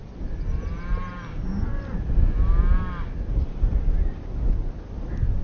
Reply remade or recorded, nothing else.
recorded